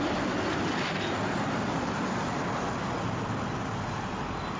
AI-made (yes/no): no